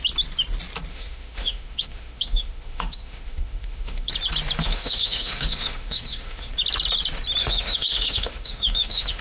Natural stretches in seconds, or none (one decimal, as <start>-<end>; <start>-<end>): 0.0-0.9; 4.1-4.6; 6.5-7.4